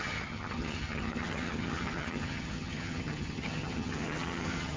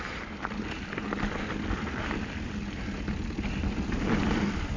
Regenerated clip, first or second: first